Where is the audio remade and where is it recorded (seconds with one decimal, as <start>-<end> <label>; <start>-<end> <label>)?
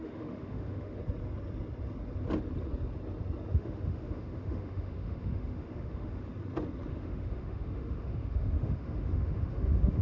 0.0-1.0 remade; 1.0-3.5 recorded; 3.5-6.3 remade; 6.3-6.9 recorded; 6.9-10.0 remade